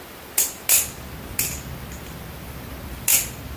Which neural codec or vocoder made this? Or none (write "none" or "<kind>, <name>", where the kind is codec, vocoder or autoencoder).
none